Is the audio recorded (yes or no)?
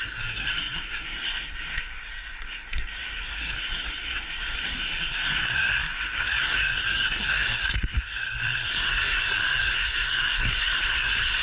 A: no